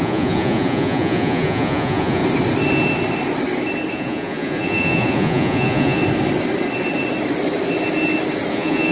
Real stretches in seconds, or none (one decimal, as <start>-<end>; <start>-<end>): 2.2-3.9; 6.0-8.5